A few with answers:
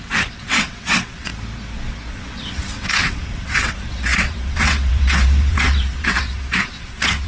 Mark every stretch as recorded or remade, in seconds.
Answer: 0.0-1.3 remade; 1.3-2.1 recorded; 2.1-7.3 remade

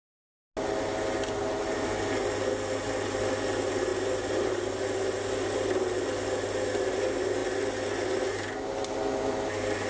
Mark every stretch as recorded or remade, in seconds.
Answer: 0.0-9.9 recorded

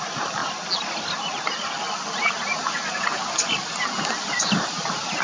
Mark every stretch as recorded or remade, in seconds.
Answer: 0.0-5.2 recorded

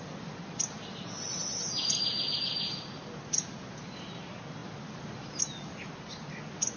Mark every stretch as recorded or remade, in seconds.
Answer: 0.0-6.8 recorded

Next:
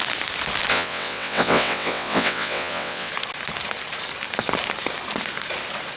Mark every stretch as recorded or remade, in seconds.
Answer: 0.0-0.7 recorded; 0.7-3.1 remade; 3.1-6.0 recorded